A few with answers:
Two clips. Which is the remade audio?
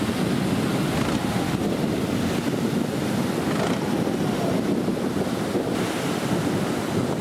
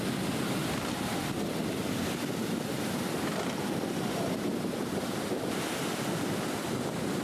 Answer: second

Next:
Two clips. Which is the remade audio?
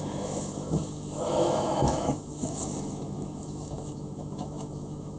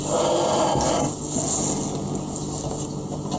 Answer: first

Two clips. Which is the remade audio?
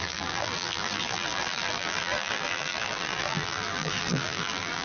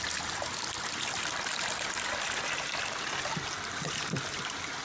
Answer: first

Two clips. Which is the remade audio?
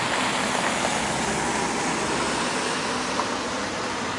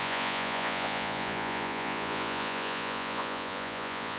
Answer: second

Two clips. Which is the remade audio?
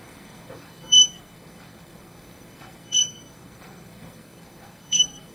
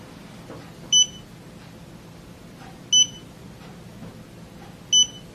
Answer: first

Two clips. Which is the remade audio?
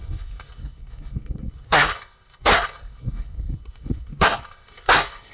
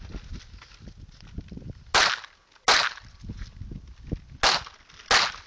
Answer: first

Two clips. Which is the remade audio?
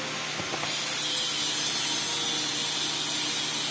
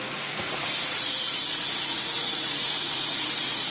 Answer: second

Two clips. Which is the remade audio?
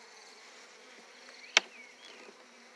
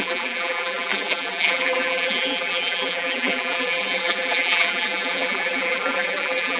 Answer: second